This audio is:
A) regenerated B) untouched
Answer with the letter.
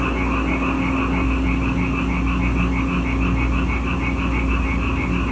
B